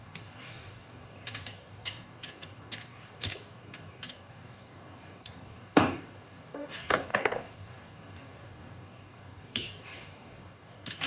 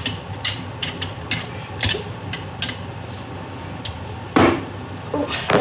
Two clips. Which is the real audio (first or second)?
second